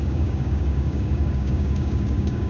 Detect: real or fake fake